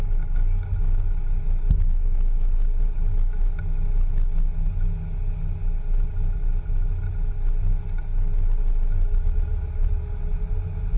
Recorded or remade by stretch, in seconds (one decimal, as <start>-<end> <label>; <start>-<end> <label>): 0.0-11.0 recorded